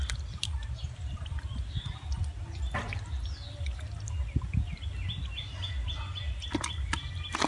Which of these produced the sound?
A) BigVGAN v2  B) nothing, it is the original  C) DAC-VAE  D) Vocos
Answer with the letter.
B